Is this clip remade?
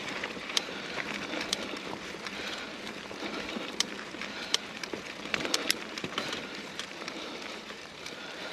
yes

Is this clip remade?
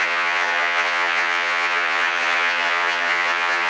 yes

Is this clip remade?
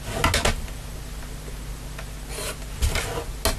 no